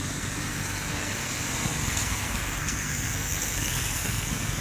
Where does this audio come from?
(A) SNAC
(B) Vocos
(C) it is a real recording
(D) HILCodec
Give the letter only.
A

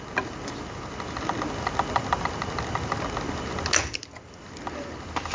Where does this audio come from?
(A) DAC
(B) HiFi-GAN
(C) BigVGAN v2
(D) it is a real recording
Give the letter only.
D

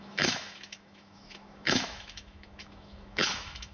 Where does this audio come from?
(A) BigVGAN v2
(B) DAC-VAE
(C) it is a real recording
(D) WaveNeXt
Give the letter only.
B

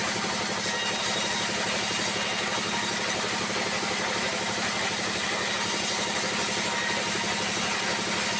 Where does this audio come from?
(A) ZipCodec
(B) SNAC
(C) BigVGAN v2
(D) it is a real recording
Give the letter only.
D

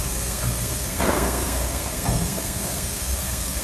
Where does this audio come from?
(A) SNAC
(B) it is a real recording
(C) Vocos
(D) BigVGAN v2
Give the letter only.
A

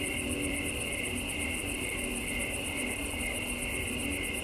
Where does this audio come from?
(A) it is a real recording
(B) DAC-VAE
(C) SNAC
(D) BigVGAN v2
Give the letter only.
D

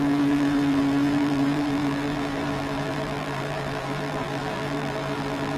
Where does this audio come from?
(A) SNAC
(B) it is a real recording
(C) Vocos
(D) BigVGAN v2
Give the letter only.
D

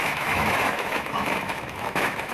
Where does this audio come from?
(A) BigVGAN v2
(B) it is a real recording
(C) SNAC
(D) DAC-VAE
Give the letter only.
D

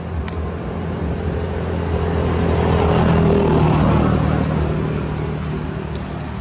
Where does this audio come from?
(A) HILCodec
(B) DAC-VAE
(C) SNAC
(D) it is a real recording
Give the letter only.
D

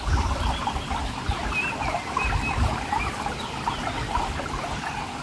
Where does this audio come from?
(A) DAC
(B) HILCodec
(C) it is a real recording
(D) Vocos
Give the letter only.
C